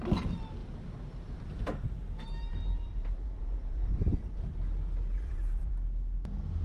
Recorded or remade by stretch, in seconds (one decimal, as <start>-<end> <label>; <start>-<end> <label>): 0.0-0.6 recorded; 0.6-4.6 remade; 4.6-5.1 recorded; 5.1-5.7 remade; 5.7-6.6 recorded